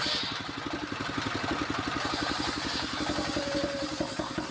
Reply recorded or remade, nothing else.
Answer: recorded